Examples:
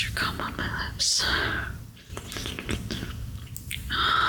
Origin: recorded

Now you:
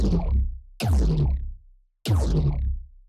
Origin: recorded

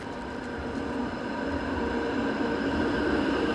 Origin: remade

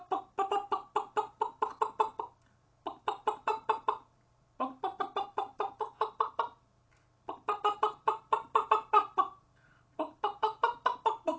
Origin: remade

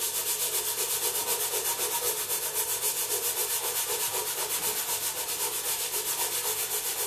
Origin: recorded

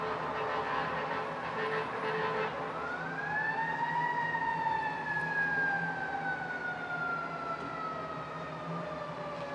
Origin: recorded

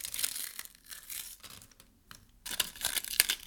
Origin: remade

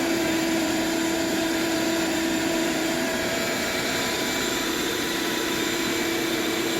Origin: remade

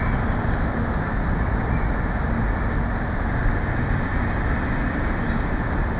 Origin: recorded